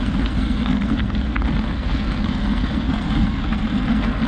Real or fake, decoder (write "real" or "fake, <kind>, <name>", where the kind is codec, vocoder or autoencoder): fake, codec, SNAC